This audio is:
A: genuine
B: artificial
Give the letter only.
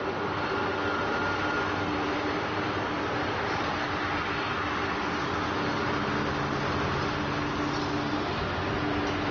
A